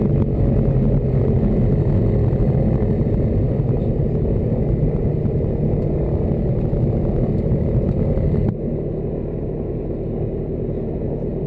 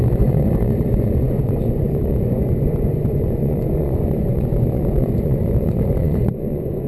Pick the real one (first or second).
first